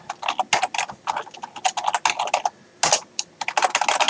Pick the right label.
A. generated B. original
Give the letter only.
B